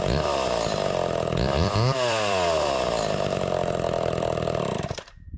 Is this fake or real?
fake